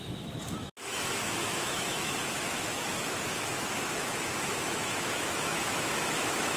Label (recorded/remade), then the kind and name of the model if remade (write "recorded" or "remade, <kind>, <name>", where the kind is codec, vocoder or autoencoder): remade, autoencoder, DAC-VAE